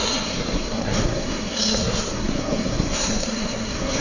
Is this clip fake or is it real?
fake